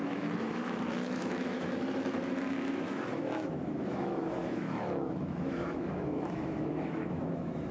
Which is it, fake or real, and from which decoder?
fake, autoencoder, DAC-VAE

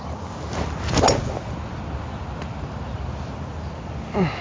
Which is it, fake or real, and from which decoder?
real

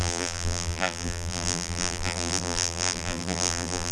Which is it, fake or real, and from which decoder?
fake, vocoder, BigVGAN v2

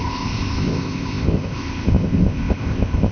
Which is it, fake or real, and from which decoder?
fake, codec, ZipCodec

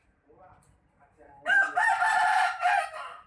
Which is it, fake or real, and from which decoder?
real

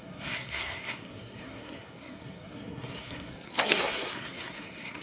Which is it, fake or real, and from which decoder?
fake, codec, SNAC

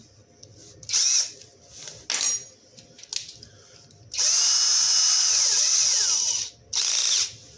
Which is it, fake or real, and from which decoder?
real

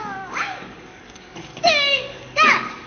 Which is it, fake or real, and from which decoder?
fake, codec, DAC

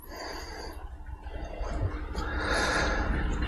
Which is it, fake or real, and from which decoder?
real